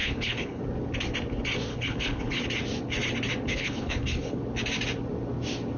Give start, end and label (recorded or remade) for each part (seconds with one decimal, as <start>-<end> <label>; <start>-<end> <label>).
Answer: 0.0-0.6 remade; 0.6-1.7 recorded; 1.7-2.4 remade; 2.4-3.5 recorded; 3.5-4.4 remade; 4.4-5.8 recorded